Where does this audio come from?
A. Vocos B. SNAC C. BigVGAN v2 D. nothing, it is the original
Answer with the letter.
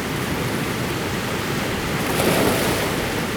D